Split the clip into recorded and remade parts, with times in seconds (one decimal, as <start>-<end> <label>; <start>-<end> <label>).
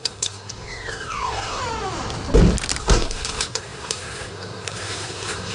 0.0-1.6 remade; 1.6-2.8 recorded; 2.8-5.5 remade